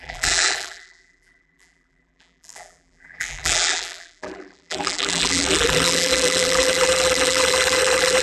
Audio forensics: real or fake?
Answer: fake